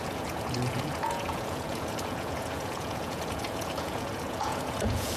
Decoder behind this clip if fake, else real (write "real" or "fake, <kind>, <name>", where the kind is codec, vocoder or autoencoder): fake, vocoder, Vocos